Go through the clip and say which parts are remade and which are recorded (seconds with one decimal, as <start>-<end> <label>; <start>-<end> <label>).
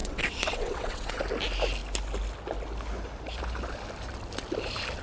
0.0-1.2 remade; 1.2-5.0 recorded